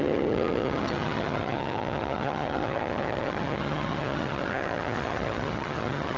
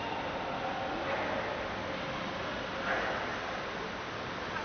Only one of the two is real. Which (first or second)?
second